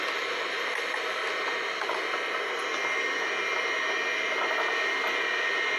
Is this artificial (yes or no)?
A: no